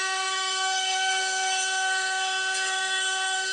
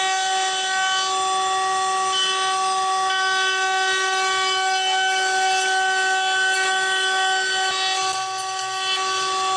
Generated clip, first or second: first